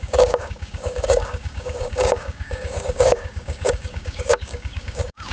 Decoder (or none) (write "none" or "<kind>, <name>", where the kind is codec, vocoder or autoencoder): codec, DAC